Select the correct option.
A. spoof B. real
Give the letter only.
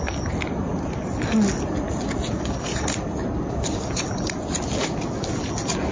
B